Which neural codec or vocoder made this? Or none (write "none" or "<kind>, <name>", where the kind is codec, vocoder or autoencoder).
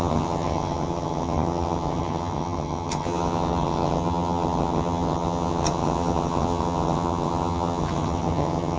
vocoder, HiFi-GAN